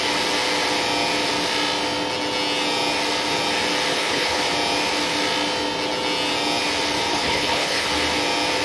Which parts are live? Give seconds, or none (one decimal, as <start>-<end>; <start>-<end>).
0.0-3.9; 4.4-7.1; 7.9-8.6